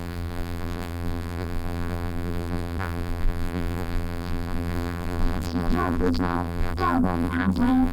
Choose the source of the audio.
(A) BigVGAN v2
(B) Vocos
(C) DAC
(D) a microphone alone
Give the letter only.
A